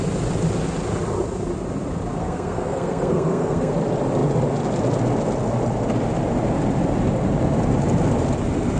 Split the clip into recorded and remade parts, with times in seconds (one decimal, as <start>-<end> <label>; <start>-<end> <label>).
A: 0.0-2.2 recorded; 2.2-3.7 remade; 3.7-8.8 recorded